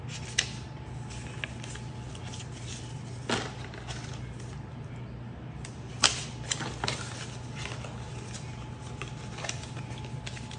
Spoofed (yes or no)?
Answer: no